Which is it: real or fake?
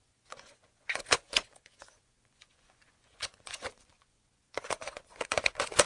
fake